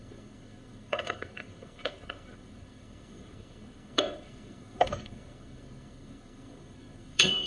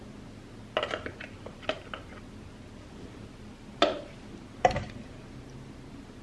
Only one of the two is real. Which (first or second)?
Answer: second